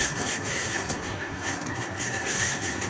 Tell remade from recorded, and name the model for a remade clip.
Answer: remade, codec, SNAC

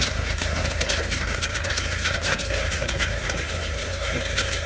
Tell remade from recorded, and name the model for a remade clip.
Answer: remade, codec, SNAC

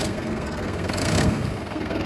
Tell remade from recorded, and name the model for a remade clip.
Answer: remade, codec, SNAC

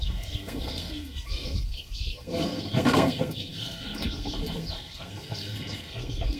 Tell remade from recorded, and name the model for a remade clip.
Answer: remade, codec, SNAC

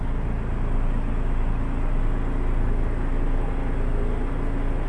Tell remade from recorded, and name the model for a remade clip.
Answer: recorded